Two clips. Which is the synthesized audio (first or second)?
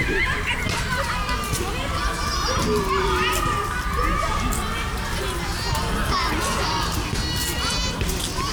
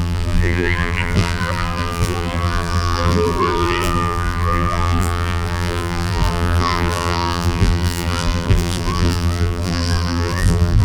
second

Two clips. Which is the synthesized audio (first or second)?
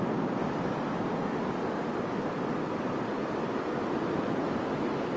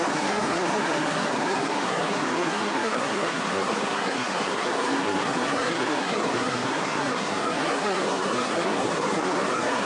second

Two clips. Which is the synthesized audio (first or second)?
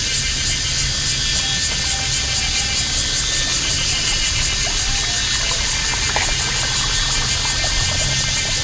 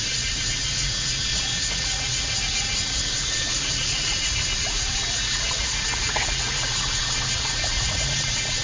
second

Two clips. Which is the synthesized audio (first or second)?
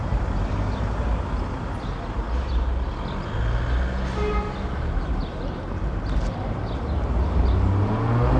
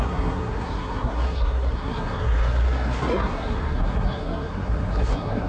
second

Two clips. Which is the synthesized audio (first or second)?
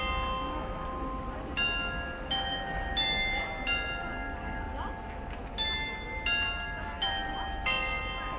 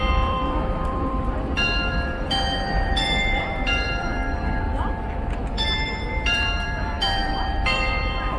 second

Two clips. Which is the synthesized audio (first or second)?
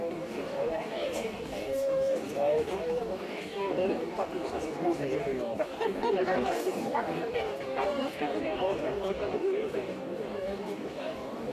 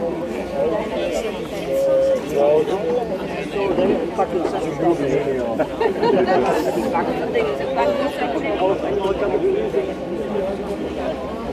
first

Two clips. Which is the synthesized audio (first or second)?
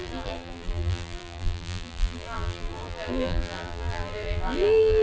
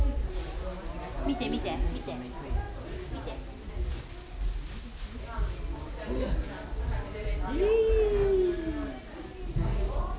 first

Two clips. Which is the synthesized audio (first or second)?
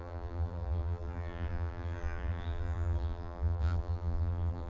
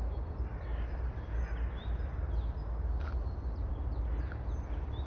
first